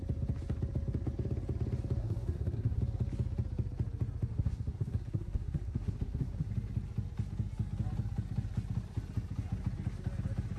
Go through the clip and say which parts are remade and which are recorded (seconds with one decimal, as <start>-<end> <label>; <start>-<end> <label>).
0.0-2.0 recorded; 2.0-2.8 remade; 2.8-4.3 recorded; 4.3-6.5 remade; 6.5-10.6 recorded